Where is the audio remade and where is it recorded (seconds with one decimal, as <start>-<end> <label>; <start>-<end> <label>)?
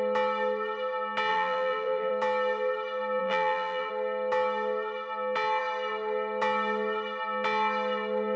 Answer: 0.0-1.3 recorded; 1.3-2.1 remade; 2.1-3.2 recorded; 3.2-3.9 remade; 3.9-8.4 recorded